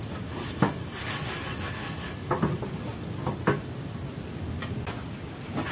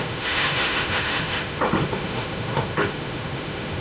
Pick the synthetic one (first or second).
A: second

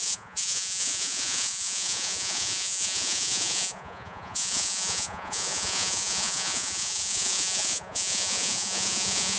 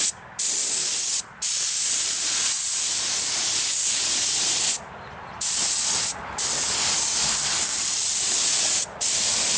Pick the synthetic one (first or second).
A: first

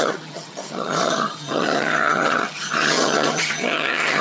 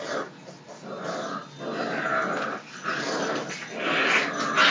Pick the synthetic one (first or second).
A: first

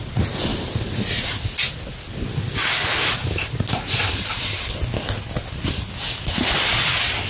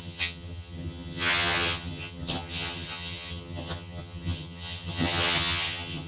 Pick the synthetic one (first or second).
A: second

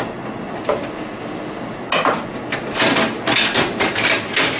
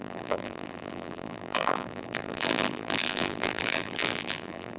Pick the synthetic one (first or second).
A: second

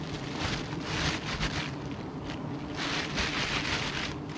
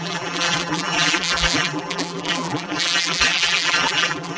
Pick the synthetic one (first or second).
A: second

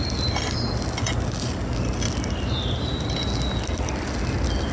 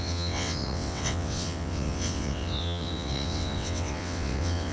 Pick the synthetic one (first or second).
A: second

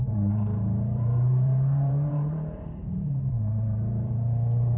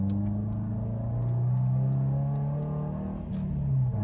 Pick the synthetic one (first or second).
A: first